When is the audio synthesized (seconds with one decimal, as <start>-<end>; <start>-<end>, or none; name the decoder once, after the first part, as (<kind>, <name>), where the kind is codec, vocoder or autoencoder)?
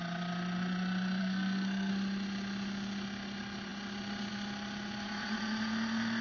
1.2-1.9 (codec, SNAC)